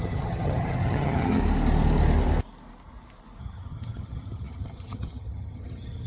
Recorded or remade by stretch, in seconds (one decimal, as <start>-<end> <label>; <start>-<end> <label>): 0.0-1.4 remade; 1.4-3.4 recorded; 3.4-6.1 remade